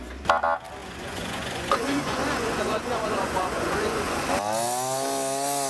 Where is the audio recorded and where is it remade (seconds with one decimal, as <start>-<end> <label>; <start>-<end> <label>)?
0.0-0.8 recorded; 0.8-4.2 remade; 4.2-5.7 recorded